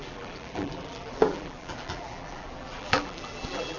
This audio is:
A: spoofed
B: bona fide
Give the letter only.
A